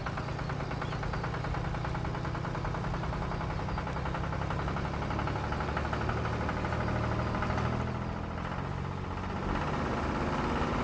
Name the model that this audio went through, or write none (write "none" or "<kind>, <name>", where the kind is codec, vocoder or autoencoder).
none